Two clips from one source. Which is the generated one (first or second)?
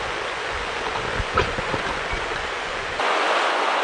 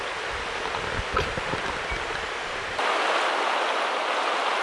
first